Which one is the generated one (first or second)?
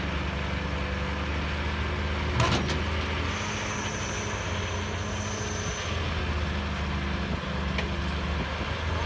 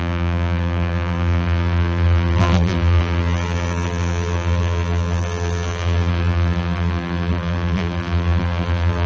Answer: second